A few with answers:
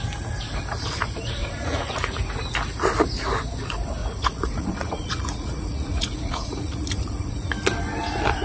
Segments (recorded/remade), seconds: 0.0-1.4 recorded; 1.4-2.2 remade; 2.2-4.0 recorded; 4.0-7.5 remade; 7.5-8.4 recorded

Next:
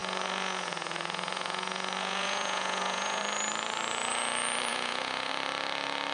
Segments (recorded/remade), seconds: 0.0-3.2 remade; 3.2-4.7 recorded; 4.7-5.3 remade; 5.3-6.1 recorded

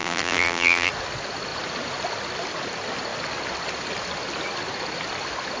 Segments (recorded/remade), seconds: 0.0-0.9 remade; 0.9-5.6 recorded

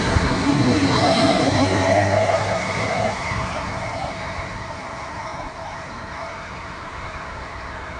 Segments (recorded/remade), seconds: 0.0-8.0 remade

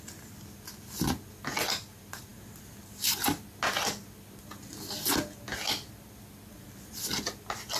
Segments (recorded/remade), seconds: 0.0-7.8 recorded